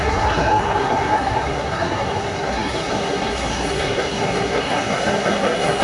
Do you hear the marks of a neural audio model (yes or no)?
yes